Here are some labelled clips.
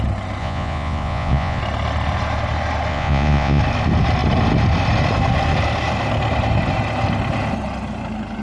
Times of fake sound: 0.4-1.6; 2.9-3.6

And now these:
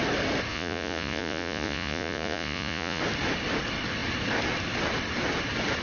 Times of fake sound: 0.5-3.0

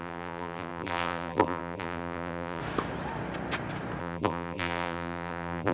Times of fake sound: 0.0-2.6; 4.0-5.7

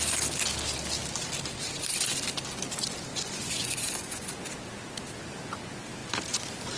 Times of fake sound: 3.1-4.3

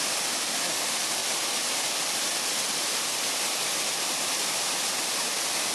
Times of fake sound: 0.0-1.2; 2.1-5.7